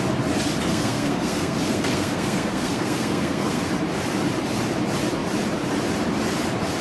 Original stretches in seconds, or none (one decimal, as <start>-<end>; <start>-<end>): 0.0-0.7; 3.7-6.8